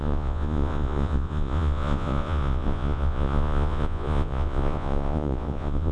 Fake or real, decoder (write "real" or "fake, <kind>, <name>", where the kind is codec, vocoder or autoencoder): fake, vocoder, Vocos